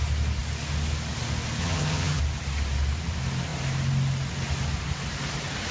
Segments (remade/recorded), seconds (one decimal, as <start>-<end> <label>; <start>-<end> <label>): 0.0-1.6 recorded; 1.6-2.2 remade; 2.2-5.7 recorded